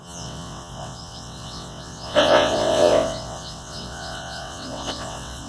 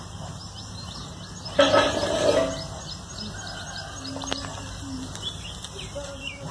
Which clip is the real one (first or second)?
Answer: second